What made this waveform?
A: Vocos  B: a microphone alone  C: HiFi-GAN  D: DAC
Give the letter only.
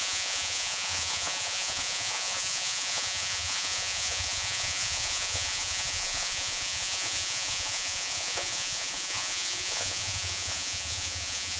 A